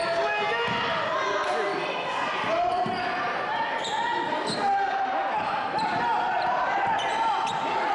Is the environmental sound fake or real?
real